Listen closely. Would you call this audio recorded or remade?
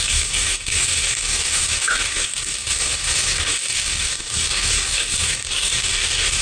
remade